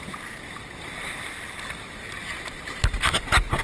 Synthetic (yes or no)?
no